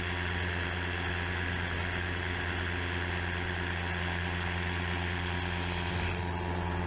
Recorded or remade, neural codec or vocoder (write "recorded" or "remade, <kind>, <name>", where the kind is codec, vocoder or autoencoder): recorded